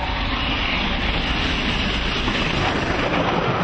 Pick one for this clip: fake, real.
real